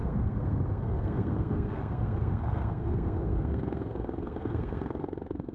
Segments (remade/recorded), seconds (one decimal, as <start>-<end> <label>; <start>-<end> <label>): 0.0-5.5 remade